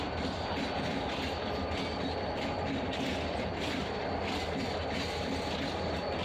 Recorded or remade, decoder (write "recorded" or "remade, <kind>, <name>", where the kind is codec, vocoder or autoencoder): recorded